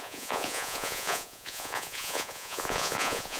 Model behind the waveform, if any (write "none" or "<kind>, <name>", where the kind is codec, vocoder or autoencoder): vocoder, Vocos